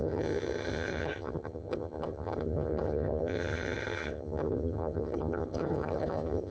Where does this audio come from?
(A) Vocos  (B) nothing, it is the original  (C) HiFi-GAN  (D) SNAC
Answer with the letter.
C